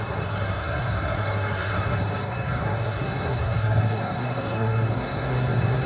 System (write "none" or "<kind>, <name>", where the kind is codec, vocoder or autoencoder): codec, SNAC